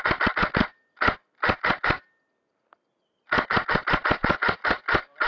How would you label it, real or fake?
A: real